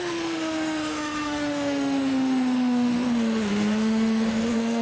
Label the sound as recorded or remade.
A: remade